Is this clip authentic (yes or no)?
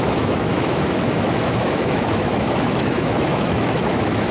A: no